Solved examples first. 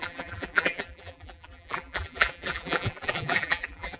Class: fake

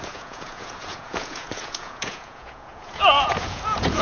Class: fake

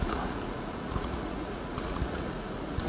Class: fake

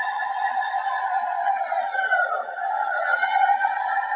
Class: fake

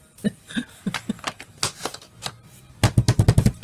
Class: real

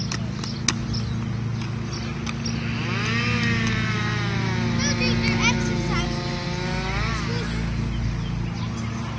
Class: real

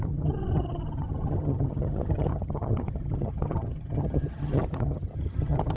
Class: fake